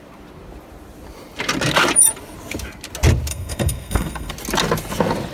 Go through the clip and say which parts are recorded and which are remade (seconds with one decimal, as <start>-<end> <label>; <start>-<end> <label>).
0.0-3.3 recorded; 3.3-4.3 remade; 4.3-5.3 recorded